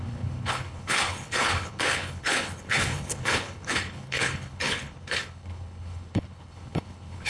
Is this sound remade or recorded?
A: remade